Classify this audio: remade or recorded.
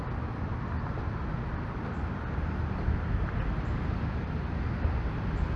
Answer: recorded